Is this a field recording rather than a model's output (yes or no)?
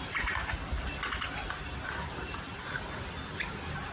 yes